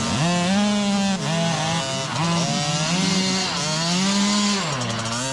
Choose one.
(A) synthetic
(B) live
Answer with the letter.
B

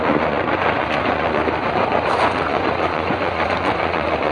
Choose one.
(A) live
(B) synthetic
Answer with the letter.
B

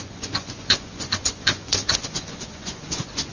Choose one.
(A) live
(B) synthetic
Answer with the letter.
B